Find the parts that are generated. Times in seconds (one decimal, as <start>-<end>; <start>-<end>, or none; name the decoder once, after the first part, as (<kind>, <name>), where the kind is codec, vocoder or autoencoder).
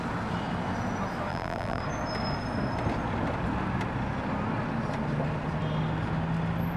1.3-1.8 (vocoder, BigVGAN v2)